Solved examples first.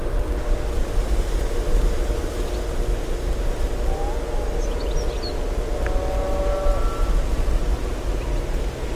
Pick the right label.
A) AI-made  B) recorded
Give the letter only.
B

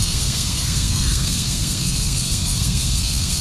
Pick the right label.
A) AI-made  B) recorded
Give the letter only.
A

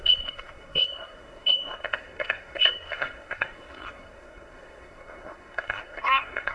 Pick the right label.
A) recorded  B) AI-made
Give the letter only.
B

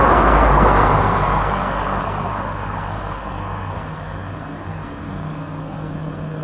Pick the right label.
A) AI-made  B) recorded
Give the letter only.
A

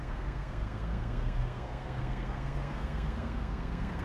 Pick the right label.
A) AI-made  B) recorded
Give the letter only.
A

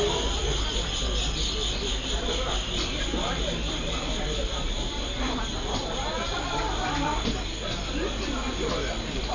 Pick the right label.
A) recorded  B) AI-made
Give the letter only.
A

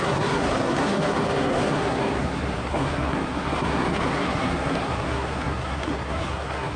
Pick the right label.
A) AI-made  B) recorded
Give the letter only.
A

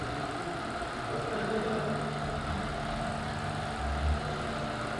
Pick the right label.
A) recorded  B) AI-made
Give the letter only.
A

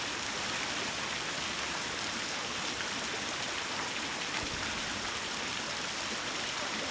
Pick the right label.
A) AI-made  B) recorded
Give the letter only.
B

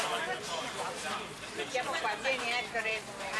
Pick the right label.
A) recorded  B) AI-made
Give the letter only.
A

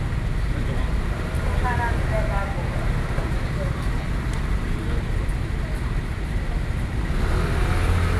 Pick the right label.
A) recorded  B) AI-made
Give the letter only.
A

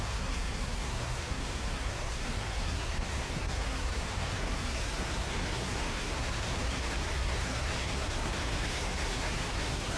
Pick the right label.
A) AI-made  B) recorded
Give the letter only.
A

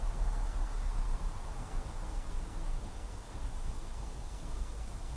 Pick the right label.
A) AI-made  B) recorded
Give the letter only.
A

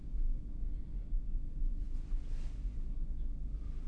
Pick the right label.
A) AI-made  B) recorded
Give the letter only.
B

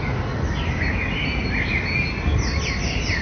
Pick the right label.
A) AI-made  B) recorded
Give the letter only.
B